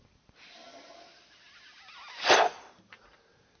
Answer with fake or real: real